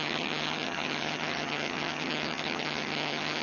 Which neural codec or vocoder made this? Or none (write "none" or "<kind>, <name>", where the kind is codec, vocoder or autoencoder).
vocoder, HiFi-GAN